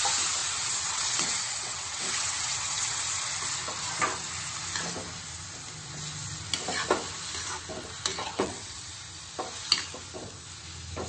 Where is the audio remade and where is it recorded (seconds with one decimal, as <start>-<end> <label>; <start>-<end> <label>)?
0.0-0.4 recorded; 0.4-3.0 remade; 3.0-8.2 recorded; 8.2-9.0 remade; 9.0-11.1 recorded